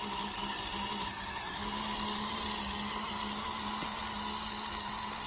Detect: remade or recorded recorded